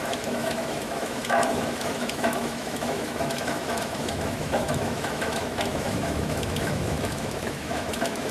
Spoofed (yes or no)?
yes